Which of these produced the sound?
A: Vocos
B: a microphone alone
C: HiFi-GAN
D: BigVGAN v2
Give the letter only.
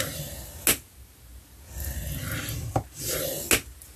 B